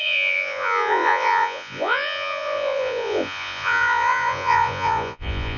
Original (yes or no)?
no